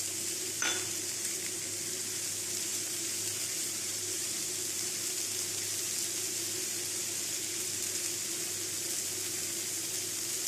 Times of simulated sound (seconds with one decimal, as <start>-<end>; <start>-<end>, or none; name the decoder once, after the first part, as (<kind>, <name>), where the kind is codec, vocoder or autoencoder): 2.7-4.5 (vocoder, BigVGAN v2)